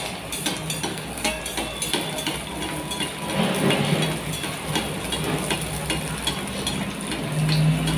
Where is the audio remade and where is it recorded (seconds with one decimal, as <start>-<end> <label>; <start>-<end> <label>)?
0.0-0.9 recorded; 0.9-1.4 remade; 1.4-8.0 recorded